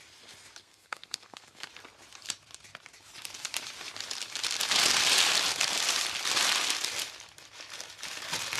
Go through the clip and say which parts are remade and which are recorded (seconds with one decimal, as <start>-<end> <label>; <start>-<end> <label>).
0.0-0.6 recorded; 0.6-1.7 remade; 1.7-8.6 recorded